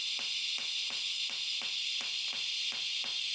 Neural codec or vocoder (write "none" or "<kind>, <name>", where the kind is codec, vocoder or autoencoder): none